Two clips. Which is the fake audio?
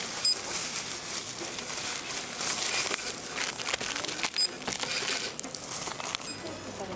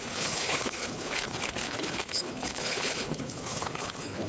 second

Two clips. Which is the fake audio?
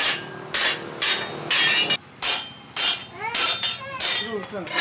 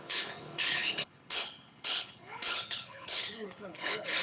second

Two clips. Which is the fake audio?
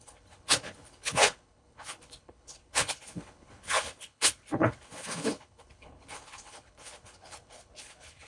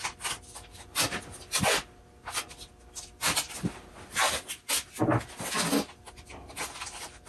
first